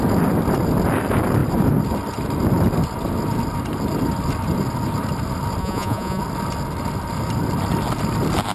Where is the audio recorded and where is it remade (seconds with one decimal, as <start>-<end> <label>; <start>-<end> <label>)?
0.0-5.6 recorded; 5.6-6.2 remade; 6.2-8.5 recorded